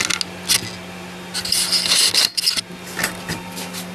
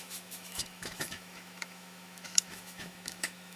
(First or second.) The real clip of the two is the first